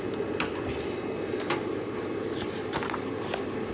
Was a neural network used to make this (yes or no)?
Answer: no